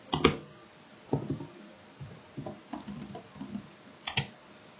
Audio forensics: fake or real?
real